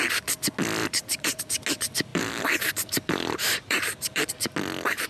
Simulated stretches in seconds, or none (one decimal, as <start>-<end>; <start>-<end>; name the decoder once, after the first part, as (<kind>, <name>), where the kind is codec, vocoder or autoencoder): 0.8-1.4 (vocoder, BigVGAN v2); 2.1-4.3